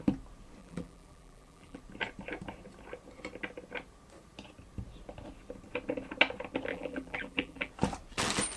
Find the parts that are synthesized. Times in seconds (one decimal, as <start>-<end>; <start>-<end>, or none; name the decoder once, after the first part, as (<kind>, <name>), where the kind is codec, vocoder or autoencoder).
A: 0.6-1.8 (vocoder, BigVGAN v2); 6.7-7.7